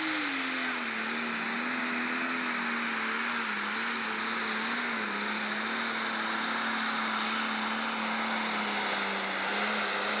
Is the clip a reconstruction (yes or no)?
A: no